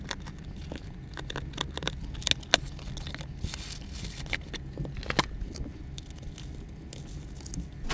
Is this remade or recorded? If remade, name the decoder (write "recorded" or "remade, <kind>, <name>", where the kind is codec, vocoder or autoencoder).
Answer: recorded